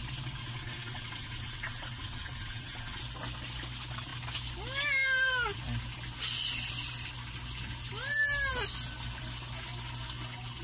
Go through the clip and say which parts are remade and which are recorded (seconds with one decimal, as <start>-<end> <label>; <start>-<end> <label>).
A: 0.0-0.4 recorded; 0.4-3.0 remade; 3.0-10.6 recorded